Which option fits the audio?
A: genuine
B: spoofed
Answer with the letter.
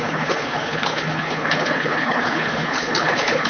B